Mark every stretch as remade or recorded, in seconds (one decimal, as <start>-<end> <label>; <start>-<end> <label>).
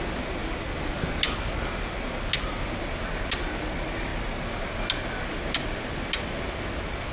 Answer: 0.0-7.1 recorded